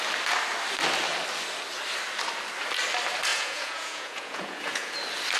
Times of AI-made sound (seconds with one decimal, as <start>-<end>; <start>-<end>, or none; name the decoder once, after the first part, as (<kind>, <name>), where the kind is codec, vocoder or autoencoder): 3.3-4.9 (vocoder, Vocos)